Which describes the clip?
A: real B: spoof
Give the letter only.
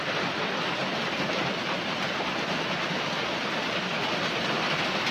A